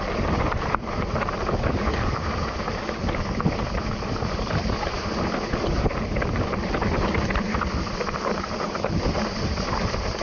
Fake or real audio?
fake